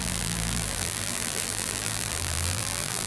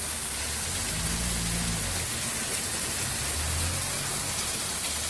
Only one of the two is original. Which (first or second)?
second